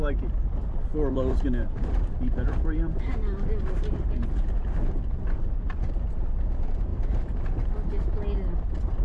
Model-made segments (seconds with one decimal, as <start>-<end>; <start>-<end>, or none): 0.9-3.2

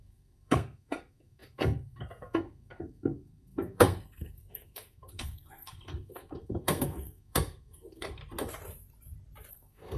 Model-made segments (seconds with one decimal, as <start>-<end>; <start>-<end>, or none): 0.0-8.2; 9.5-10.0

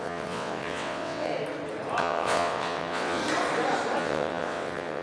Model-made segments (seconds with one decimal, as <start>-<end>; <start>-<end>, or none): 0.0-1.3; 2.0-3.2; 4.0-5.0

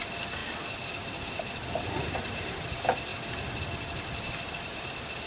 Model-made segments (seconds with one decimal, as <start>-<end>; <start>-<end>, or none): 0.0-3.1; 4.4-5.3

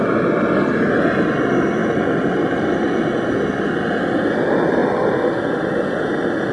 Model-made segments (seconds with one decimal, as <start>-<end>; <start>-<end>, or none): none

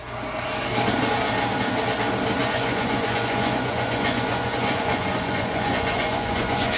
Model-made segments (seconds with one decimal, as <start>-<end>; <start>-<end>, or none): 2.4-6.8